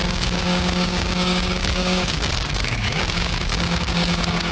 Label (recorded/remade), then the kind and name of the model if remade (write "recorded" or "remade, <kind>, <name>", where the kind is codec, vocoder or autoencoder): remade, codec, DAC